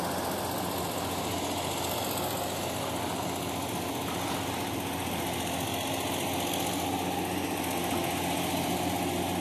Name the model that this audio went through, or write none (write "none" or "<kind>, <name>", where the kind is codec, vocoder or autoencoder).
none